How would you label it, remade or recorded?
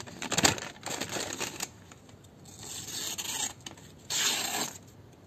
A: recorded